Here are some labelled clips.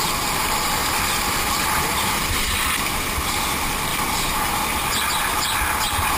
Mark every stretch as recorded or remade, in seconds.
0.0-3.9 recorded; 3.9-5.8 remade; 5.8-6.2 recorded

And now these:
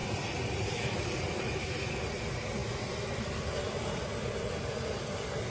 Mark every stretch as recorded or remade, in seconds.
0.0-5.5 remade